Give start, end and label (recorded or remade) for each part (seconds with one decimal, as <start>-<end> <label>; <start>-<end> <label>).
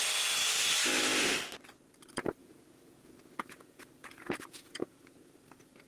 0.0-2.4 recorded; 2.4-5.3 remade; 5.3-5.9 recorded